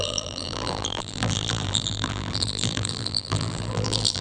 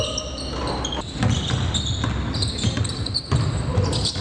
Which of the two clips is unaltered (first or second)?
second